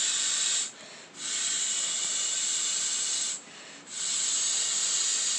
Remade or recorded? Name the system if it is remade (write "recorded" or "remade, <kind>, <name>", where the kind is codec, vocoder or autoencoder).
recorded